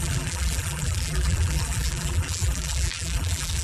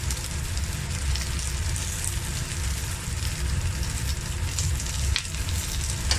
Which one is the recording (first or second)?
second